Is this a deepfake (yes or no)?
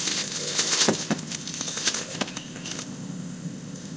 yes